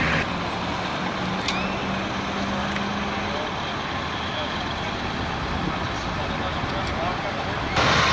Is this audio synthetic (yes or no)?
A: no